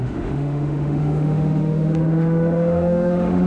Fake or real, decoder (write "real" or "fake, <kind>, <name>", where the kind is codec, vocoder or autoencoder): fake, autoencoder, DAC-VAE